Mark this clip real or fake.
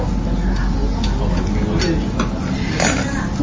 real